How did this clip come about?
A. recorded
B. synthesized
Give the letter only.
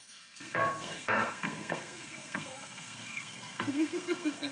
B